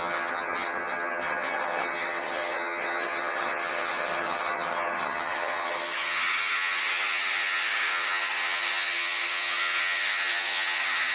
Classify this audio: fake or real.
fake